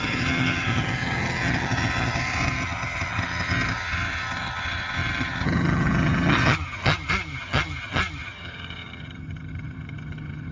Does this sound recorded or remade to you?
remade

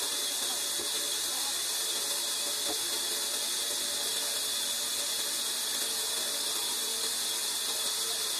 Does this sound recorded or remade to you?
recorded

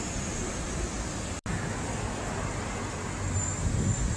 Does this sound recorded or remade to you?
recorded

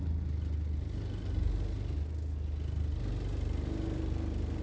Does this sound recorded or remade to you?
recorded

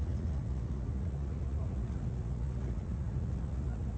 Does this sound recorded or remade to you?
remade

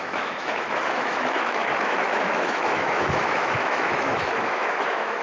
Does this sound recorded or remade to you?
remade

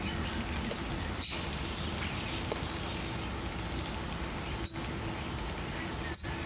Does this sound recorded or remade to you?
recorded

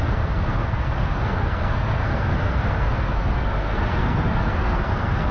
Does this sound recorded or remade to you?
remade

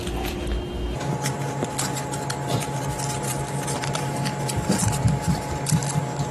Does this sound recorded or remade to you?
recorded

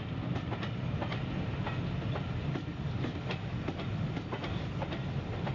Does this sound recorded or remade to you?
recorded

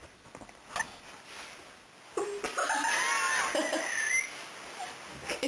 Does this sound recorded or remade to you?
recorded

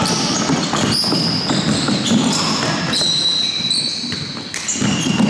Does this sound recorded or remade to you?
recorded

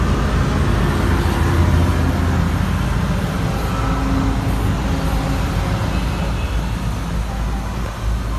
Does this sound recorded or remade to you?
recorded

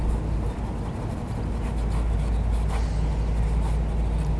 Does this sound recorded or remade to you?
recorded